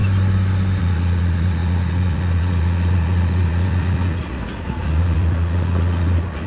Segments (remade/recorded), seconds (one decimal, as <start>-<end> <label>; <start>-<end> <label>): 0.0-0.8 recorded; 0.8-6.5 remade